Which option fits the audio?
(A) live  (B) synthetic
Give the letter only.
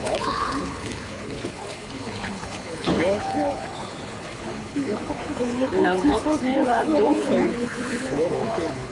B